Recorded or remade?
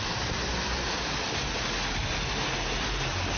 recorded